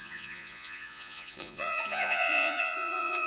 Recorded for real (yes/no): no